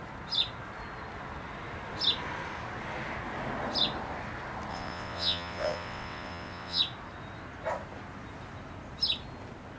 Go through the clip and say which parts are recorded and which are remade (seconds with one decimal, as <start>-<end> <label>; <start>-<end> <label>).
0.0-4.7 recorded; 4.7-6.8 remade; 6.8-9.8 recorded